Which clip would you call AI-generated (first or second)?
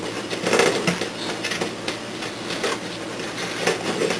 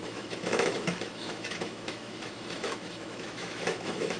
second